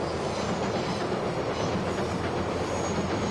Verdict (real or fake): real